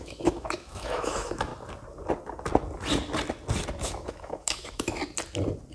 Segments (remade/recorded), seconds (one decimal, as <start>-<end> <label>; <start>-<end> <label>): 0.0-1.5 remade; 1.5-3.8 recorded; 3.8-5.0 remade; 5.0-5.7 recorded